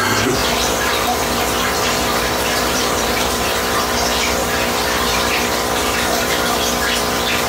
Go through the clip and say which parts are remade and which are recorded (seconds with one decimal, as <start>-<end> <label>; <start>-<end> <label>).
0.0-0.4 recorded; 0.4-3.8 remade; 3.8-5.8 recorded; 5.8-6.3 remade; 6.3-7.5 recorded